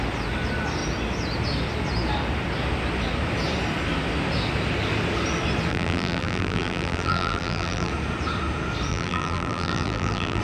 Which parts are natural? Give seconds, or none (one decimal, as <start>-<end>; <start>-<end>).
0.0-5.7; 7.9-8.9